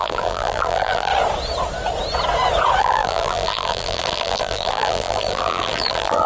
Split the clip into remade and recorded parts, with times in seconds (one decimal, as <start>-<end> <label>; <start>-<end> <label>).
0.0-1.1 remade; 1.1-2.8 recorded; 2.8-6.3 remade